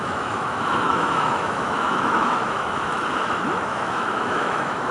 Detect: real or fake fake